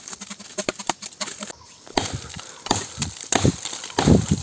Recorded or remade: recorded